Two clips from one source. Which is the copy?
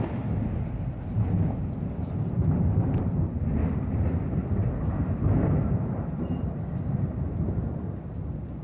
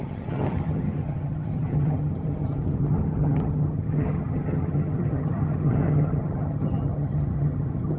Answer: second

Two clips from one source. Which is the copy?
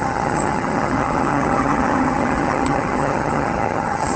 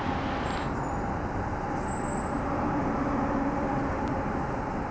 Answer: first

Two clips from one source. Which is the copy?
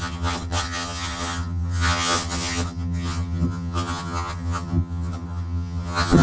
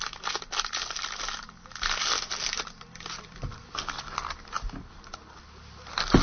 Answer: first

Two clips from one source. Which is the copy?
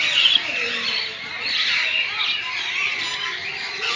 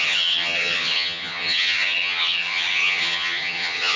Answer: second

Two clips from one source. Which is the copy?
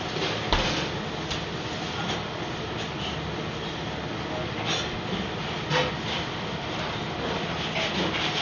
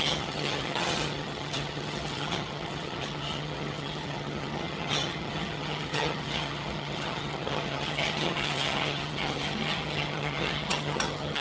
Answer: second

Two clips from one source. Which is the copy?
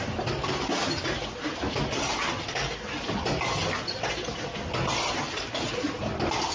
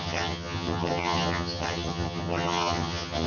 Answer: second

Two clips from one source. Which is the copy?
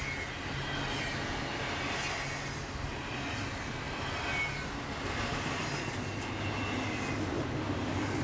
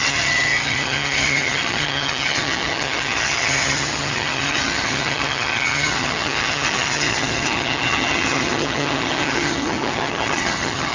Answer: second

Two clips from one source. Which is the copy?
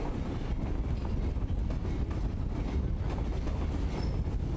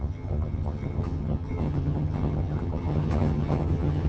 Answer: second